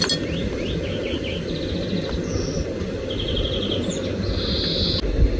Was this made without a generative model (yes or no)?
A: yes